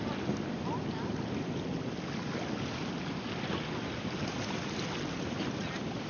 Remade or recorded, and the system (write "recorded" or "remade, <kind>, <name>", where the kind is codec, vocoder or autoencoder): recorded